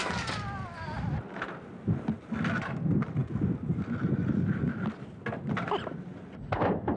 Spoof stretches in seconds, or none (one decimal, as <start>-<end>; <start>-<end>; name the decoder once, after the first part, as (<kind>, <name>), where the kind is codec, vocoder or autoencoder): none